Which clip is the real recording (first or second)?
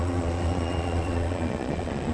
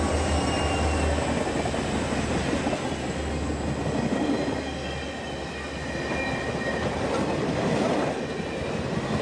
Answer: second